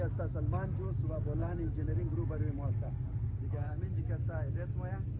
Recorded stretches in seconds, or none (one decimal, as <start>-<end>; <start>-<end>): 0.0-5.2